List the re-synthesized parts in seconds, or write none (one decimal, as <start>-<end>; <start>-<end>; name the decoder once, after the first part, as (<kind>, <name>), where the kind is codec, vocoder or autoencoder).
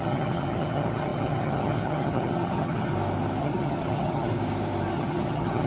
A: 0.0-2.9 (vocoder, HiFi-GAN); 3.4-4.3; 4.9-5.7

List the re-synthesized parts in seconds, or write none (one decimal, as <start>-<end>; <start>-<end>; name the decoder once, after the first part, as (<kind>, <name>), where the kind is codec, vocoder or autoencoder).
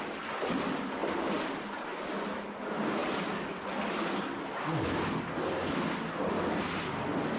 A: none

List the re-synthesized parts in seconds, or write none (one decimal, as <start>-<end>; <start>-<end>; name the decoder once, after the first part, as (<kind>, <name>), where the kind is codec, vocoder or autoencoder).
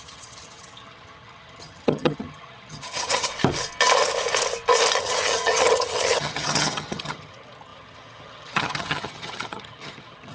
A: 0.0-3.3 (vocoder, HiFi-GAN); 5.0-10.3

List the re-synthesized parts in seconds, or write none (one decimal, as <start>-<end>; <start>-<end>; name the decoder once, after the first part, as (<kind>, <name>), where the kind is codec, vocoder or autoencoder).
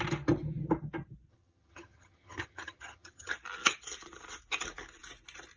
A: 1.3-3.3 (vocoder, HiFi-GAN)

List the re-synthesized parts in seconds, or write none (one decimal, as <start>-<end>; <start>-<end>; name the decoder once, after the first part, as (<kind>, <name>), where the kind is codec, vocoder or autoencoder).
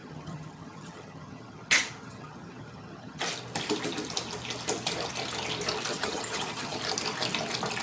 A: 0.0-3.2 (vocoder, HiFi-GAN); 5.9-6.8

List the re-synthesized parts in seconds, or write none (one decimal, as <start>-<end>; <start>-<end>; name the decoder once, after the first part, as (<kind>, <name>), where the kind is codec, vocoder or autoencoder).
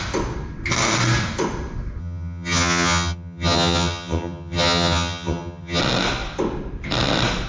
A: 2.0-5.8 (vocoder, HiFi-GAN)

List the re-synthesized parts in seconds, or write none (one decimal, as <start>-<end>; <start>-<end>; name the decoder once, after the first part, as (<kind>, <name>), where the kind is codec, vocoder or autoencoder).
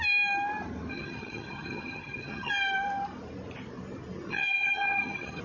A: 0.9-2.5 (vocoder, HiFi-GAN); 4.3-5.4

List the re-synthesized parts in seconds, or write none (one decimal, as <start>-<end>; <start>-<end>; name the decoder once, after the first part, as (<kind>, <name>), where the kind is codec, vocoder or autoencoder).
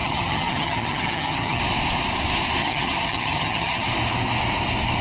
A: 0.0-1.6 (vocoder, HiFi-GAN); 2.6-3.9